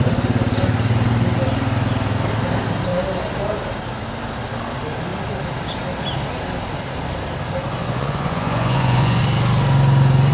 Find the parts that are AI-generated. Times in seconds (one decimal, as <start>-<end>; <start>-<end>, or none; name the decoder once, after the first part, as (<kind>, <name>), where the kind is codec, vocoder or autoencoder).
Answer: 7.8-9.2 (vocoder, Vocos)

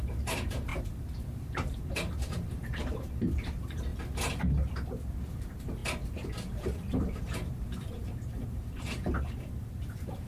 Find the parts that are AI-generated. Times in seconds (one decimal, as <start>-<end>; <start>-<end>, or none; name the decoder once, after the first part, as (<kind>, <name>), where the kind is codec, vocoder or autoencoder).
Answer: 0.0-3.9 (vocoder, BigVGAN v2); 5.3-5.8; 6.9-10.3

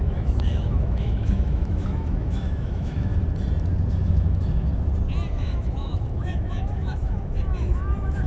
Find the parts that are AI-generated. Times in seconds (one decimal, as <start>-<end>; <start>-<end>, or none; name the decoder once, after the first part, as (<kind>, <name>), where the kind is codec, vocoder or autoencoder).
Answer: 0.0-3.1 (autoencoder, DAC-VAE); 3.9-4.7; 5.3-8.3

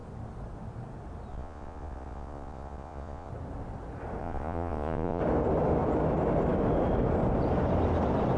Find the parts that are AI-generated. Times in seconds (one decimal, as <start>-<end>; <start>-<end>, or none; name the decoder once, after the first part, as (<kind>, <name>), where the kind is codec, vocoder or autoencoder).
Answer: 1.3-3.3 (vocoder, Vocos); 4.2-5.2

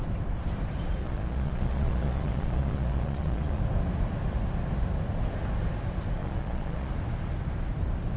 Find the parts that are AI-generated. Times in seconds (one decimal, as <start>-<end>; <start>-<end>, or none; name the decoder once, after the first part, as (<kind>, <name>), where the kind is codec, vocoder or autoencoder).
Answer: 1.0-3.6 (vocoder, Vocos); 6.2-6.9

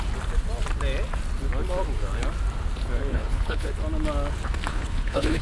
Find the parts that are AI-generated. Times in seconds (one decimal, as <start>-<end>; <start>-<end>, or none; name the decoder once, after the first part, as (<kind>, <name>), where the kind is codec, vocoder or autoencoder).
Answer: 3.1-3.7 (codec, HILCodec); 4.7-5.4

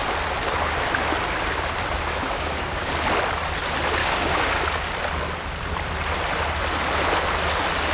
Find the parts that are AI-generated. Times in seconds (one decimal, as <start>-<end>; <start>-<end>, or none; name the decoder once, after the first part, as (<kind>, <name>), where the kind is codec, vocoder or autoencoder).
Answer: 2.2-2.9 (codec, DAC); 4.0-4.6